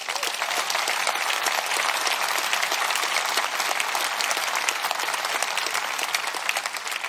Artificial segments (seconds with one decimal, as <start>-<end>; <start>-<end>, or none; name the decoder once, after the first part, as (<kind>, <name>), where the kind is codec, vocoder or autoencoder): none

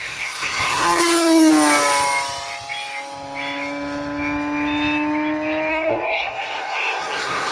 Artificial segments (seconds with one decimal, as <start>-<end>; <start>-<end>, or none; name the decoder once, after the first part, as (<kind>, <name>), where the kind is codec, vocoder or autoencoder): 0.0-1.5 (codec, SNAC); 5.7-7.5

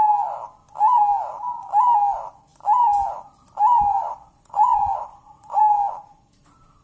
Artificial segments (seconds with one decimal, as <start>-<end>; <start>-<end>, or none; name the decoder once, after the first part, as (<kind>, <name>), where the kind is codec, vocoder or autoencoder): 3.9-5.6 (vocoder, Vocos)

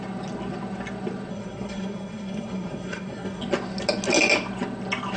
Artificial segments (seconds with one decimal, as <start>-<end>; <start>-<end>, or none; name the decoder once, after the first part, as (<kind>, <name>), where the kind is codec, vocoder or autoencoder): 1.3-3.4 (codec, SNAC)

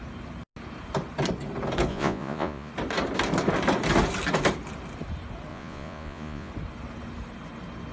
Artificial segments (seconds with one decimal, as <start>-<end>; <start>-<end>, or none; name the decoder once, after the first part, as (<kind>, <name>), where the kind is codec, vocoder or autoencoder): 1.9-2.7 (vocoder, Vocos); 5.5-6.5

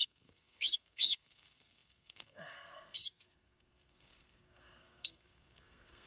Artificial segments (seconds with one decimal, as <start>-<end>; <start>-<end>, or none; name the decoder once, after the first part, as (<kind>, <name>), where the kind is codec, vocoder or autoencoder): 0.0-6.1 (codec, SNAC)